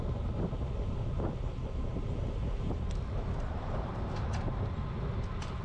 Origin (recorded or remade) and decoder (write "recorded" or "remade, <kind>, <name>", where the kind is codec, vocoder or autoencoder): recorded